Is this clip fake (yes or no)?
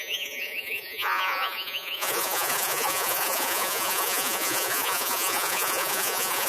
yes